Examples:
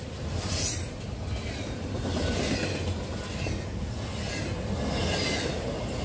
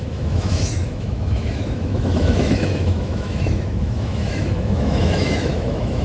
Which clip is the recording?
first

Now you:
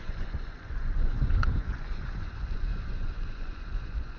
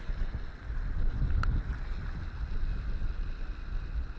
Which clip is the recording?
second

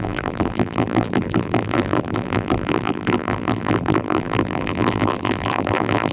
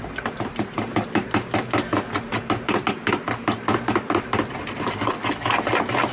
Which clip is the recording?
second